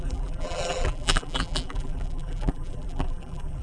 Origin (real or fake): fake